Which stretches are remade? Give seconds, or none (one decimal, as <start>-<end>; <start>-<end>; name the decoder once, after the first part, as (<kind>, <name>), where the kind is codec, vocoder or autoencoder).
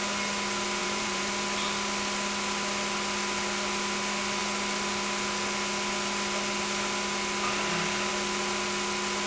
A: 0.8-1.3 (vocoder, BigVGAN v2)